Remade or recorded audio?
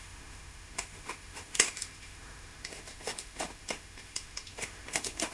remade